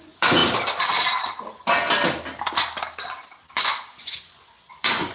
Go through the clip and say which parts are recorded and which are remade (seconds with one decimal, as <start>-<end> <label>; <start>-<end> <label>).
0.0-0.4 remade; 0.4-3.5 recorded; 3.5-5.1 remade